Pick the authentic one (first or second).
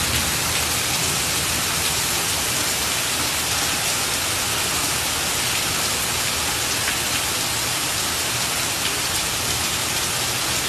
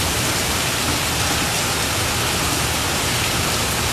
first